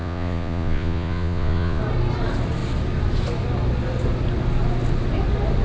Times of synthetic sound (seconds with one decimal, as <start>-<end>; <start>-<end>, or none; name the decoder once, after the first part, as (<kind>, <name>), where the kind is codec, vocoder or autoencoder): 0.0-1.8 (vocoder, Vocos)